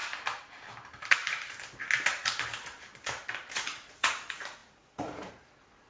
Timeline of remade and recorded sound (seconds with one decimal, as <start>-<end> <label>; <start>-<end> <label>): 0.0-3.5 recorded; 3.5-5.9 remade